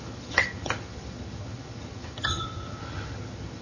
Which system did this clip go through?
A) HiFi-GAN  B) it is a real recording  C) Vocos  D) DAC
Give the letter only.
A